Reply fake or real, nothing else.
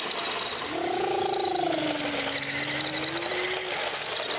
real